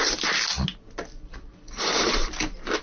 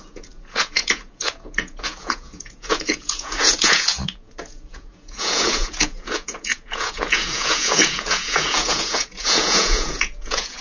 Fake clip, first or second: second